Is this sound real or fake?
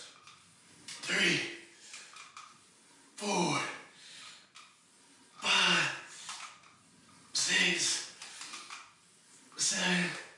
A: real